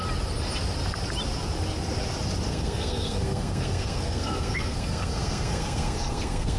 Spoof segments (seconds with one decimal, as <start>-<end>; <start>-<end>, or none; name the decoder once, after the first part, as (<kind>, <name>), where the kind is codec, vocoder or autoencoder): 2.5-6.6 (codec, SNAC)